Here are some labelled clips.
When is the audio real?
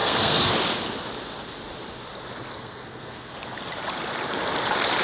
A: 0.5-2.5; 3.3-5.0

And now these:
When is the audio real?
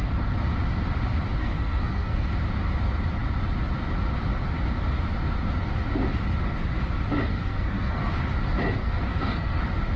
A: 0.0-1.4; 2.3-7.3; 8.0-8.8; 9.6-10.0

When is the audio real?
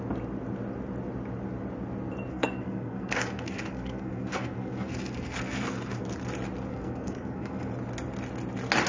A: 0.0-2.3; 6.0-6.7; 7.7-8.9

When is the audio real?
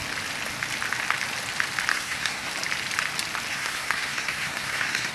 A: 0.0-1.9; 2.5-3.5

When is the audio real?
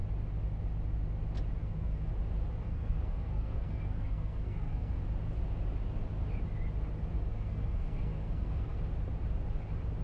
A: 0.0-1.6; 2.1-2.6; 5.0-7.3; 8.8-10.0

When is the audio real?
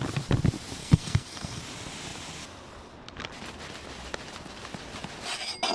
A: 0.0-0.8; 1.6-5.7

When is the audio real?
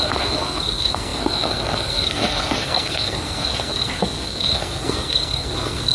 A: none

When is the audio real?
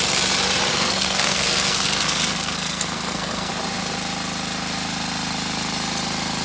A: 0.0-0.7; 3.5-6.4